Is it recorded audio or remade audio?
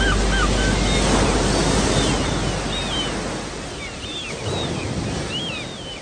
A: recorded